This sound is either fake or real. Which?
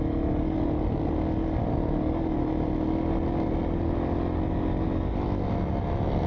real